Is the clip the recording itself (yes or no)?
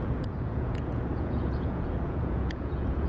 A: no